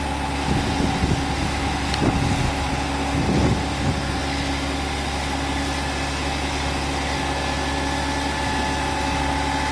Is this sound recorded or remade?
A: recorded